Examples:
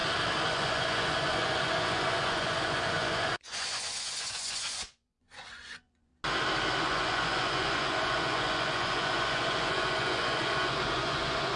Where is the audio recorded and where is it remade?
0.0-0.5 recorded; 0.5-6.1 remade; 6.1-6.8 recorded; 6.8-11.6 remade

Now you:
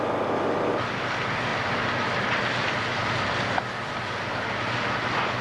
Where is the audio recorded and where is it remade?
0.0-5.4 recorded

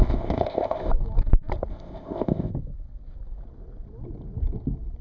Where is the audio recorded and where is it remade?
0.0-0.9 remade; 0.9-1.7 recorded; 1.7-2.5 remade; 2.5-5.0 recorded

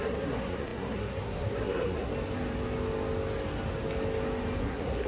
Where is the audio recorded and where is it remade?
0.0-2.1 remade; 2.1-4.6 recorded; 4.6-5.1 remade

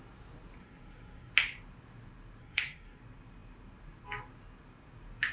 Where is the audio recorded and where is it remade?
0.0-0.6 recorded; 0.6-1.3 remade; 1.3-2.4 recorded; 2.4-3.0 remade; 3.0-5.3 recorded

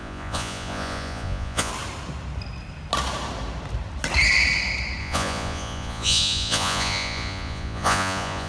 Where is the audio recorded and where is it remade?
0.0-1.7 remade; 1.7-5.0 recorded; 5.0-8.5 remade